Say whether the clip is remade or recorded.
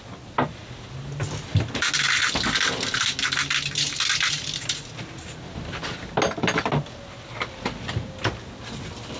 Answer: recorded